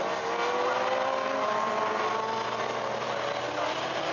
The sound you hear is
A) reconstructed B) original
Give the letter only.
B